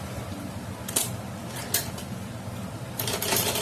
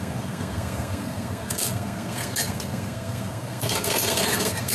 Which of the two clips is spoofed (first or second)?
second